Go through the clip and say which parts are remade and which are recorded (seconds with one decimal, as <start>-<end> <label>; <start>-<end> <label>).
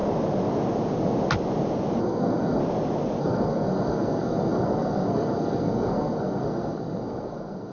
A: 0.0-2.0 recorded; 2.0-2.6 remade; 2.6-3.2 recorded; 3.2-7.7 remade